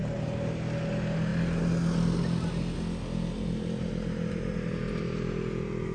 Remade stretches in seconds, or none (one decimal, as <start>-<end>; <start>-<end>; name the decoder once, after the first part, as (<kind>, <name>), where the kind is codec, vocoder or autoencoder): none